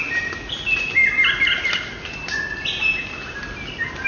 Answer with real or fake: real